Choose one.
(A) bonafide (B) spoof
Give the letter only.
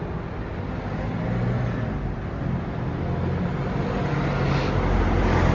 A